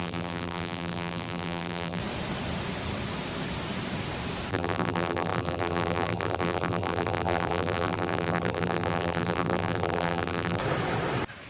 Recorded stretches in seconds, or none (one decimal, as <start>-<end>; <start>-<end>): 2.0-4.5; 10.6-11.5